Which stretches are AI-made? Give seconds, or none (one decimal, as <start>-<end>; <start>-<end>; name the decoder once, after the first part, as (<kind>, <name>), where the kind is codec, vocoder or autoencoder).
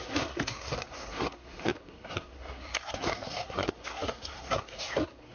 0.0-5.3 (codec, SNAC)